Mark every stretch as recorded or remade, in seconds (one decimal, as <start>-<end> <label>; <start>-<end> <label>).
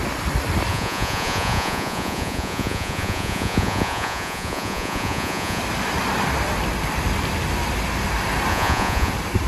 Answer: 0.0-0.7 recorded; 0.7-5.6 remade; 5.6-8.5 recorded; 8.5-9.1 remade; 9.1-9.5 recorded